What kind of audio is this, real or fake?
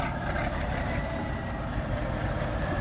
real